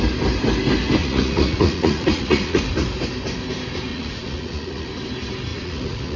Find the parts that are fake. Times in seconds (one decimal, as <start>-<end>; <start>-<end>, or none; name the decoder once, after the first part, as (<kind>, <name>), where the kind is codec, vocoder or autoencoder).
1.0-2.6 (vocoder, Vocos); 3.9-4.9; 5.5-6.2